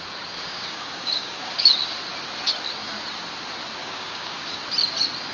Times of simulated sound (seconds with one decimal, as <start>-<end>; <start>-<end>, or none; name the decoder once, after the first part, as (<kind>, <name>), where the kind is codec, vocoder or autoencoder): 0.4-1.7 (codec, DAC); 3.8-4.6